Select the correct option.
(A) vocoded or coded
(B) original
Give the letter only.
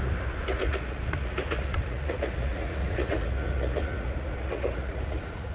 A